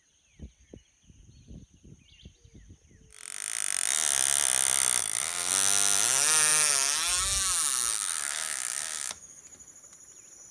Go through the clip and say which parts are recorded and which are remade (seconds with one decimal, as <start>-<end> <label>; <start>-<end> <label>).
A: 0.0-5.0 recorded; 5.0-5.5 remade; 5.5-7.9 recorded; 7.9-9.4 remade; 9.4-10.5 recorded